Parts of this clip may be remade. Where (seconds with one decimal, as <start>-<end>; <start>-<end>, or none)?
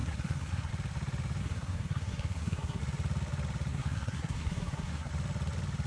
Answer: 0.0-0.7; 1.4-2.8; 3.7-5.1